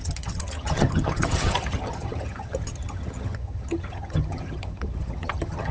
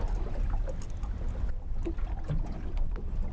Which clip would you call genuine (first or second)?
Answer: second